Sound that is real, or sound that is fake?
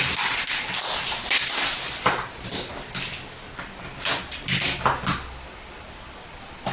real